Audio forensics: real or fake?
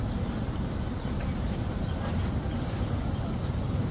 real